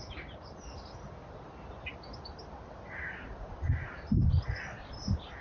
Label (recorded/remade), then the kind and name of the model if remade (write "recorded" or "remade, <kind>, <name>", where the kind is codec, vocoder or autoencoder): recorded